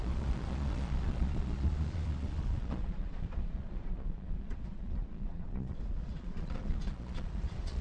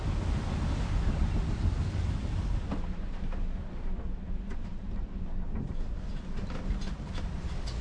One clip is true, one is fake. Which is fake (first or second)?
first